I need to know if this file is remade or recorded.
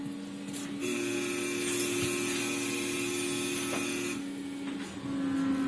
recorded